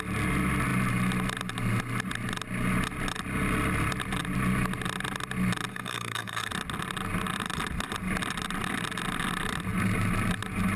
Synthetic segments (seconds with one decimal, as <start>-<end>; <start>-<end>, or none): 5.7-6.5